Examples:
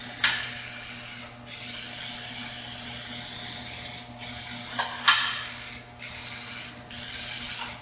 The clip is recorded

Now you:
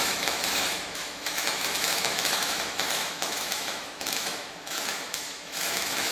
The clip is remade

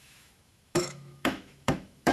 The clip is remade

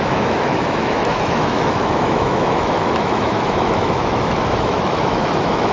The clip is remade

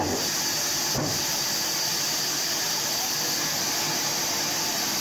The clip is recorded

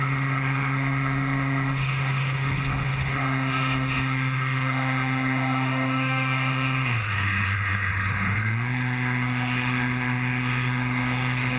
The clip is remade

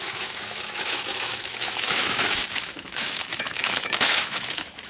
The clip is remade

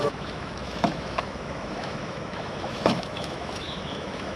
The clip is remade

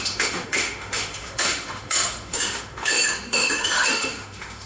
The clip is remade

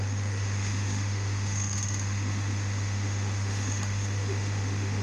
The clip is remade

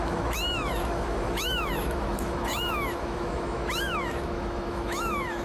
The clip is remade